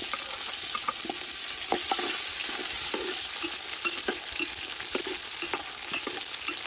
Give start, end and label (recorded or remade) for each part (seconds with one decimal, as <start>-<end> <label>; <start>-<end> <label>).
0.0-6.7 recorded